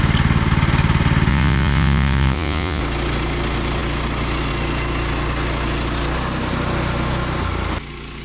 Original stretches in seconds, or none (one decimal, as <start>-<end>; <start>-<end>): 0.0-1.3; 2.8-8.2